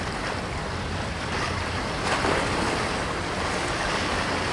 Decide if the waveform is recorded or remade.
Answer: remade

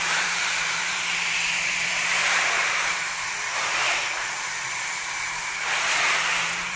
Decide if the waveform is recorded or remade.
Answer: remade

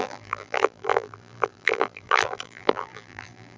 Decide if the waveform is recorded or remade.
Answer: remade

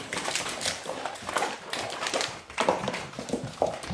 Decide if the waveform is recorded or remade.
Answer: remade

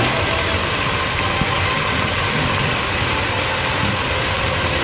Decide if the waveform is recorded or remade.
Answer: remade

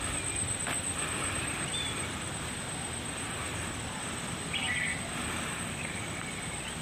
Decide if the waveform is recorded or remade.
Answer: recorded